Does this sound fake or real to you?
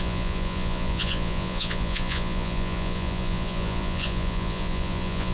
fake